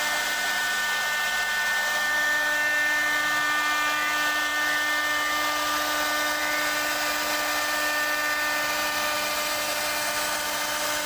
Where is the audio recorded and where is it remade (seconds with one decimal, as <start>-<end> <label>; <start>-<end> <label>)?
0.0-11.1 recorded

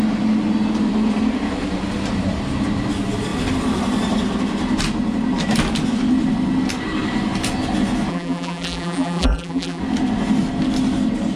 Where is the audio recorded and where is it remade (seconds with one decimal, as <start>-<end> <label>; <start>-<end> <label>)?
0.0-8.1 recorded; 8.1-9.8 remade; 9.8-11.4 recorded